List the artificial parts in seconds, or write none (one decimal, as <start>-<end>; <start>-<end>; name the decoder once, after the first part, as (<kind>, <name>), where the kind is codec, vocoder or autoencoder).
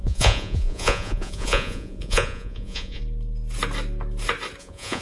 0.0-3.0 (vocoder, Vocos); 4.6-5.0